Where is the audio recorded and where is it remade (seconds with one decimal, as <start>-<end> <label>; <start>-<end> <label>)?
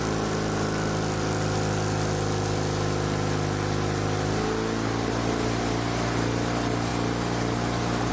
0.0-8.1 recorded